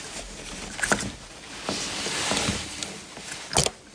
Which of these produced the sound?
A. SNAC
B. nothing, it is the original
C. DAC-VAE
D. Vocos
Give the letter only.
B